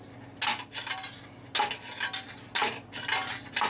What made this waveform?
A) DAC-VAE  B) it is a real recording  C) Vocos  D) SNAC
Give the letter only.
B